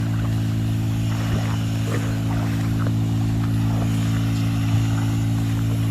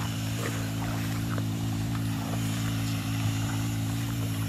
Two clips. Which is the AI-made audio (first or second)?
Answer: second